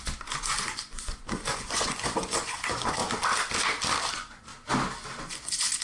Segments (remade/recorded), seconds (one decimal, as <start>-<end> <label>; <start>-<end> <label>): 0.0-3.0 remade; 3.0-4.1 recorded; 4.1-4.5 remade; 4.5-5.2 recorded; 5.2-5.8 remade